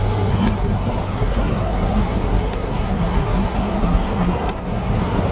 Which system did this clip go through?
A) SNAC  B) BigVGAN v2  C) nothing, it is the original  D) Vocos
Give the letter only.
A